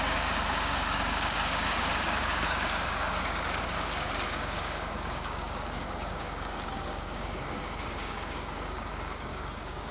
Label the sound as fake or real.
fake